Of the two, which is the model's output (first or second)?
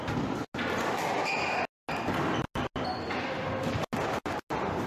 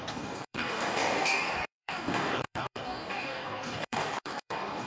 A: second